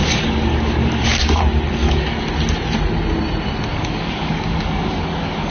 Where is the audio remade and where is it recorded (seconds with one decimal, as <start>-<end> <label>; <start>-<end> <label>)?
0.0-1.4 remade; 1.4-1.8 recorded; 1.8-2.3 remade; 2.3-3.7 recorded; 3.7-5.5 remade